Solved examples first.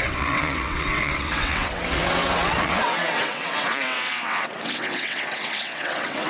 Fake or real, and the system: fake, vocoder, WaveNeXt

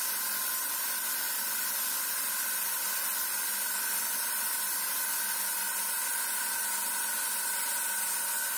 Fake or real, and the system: real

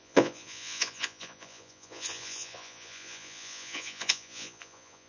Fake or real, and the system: fake, vocoder, Vocos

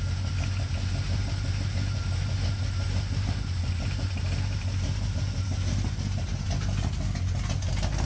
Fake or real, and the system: real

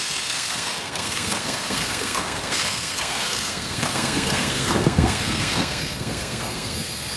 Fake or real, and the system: fake, codec, SNAC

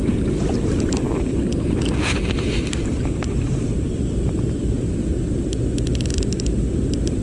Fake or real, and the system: real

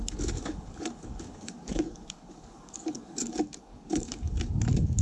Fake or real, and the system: fake, codec, DAC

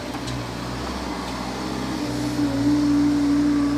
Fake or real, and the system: real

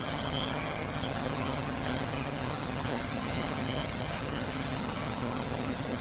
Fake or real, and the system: fake, vocoder, HiFi-GAN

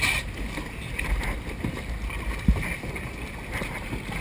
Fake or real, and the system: real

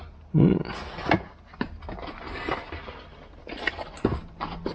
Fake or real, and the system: real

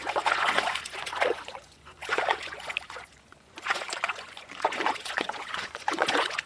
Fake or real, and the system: fake, vocoder, Vocos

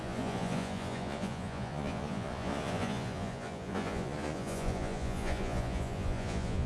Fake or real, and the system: fake, vocoder, Vocos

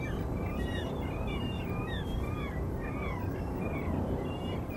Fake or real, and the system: fake, vocoder, BigVGAN v2